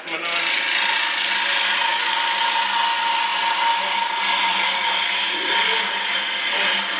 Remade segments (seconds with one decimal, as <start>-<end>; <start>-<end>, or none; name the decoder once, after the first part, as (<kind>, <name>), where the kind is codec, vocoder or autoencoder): 1.9-2.4 (codec, DAC)